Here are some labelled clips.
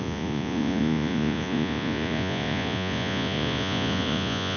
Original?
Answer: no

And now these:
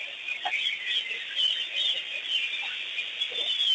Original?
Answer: yes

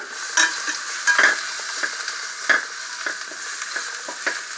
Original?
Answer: yes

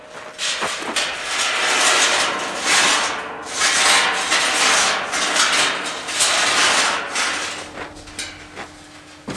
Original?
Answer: yes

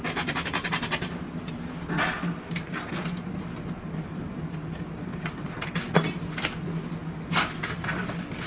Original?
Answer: yes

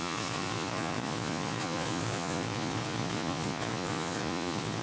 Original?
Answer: no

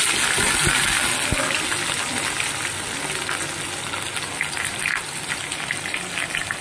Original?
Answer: yes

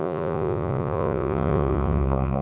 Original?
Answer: no